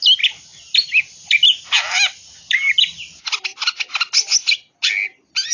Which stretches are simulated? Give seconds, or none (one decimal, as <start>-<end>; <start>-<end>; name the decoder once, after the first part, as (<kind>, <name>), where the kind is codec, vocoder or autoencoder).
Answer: none